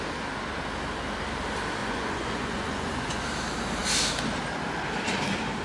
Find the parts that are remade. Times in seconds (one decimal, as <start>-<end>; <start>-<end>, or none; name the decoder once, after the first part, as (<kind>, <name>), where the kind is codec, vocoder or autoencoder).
1.8-3.2 (vocoder, Vocos)